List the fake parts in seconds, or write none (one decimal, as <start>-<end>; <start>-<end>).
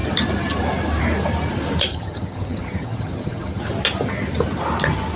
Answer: 1.9-3.6